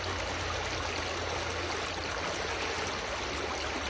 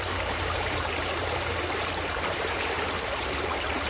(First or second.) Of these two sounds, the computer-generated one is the second